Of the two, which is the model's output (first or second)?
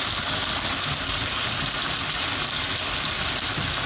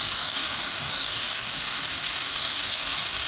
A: second